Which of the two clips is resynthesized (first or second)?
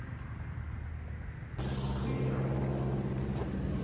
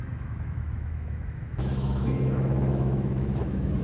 second